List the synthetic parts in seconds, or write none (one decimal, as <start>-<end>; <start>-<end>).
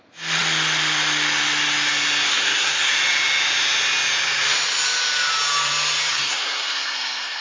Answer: 2.3-2.9; 6.1-7.4